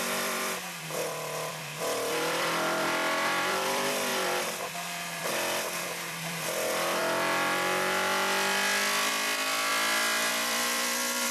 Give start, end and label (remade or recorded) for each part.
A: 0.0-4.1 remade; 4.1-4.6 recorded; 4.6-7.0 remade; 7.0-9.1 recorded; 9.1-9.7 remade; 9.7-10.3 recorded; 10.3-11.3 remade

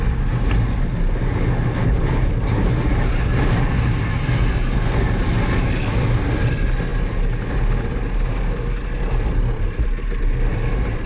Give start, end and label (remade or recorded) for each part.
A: 0.0-11.1 recorded

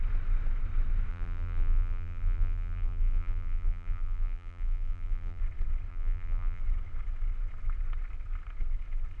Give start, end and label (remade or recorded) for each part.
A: 0.0-1.1 recorded; 1.1-5.4 remade; 5.4-5.9 recorded; 5.9-6.6 remade; 6.6-9.2 recorded